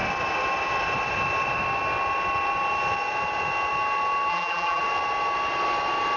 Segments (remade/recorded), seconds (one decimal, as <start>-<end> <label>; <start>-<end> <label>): 0.0-4.3 recorded; 4.3-4.8 remade; 4.8-6.2 recorded